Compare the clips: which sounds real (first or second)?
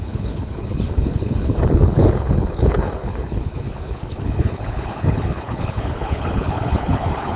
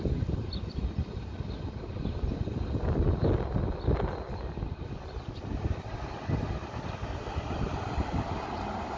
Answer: second